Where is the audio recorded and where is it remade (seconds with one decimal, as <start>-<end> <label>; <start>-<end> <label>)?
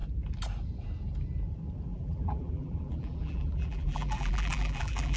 0.0-1.9 recorded; 1.9-5.2 remade